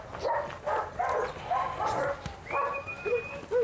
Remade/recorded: recorded